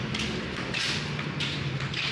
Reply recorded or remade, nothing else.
recorded